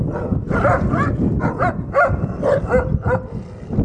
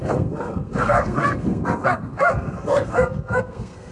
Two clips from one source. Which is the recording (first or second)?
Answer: first